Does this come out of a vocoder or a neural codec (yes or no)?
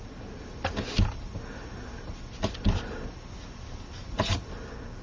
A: no